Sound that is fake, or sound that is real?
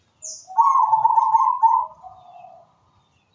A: real